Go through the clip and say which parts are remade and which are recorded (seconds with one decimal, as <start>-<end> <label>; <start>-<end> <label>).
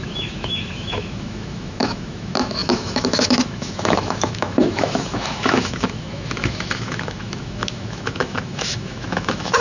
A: 0.0-9.6 remade